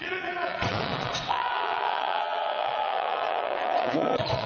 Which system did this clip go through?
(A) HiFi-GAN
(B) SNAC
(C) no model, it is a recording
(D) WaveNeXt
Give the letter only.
D